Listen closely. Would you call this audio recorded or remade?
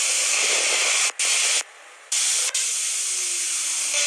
recorded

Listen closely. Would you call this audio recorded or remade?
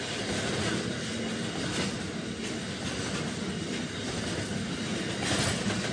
recorded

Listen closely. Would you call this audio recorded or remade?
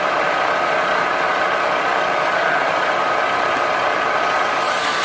remade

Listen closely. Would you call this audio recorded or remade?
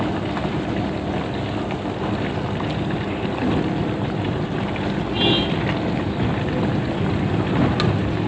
recorded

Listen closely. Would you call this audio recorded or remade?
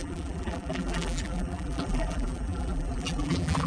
remade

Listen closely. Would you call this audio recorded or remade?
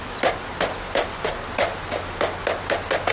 recorded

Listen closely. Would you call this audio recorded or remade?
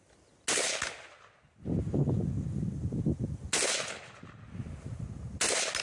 recorded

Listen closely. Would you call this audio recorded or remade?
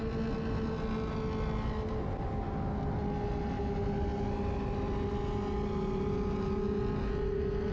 recorded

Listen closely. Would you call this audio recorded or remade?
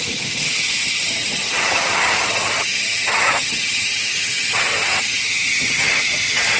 remade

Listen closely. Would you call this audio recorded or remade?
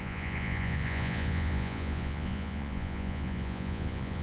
remade